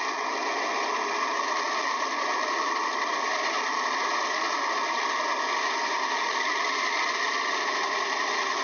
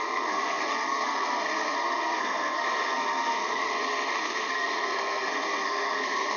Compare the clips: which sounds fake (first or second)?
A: second